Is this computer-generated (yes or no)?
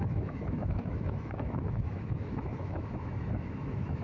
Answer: yes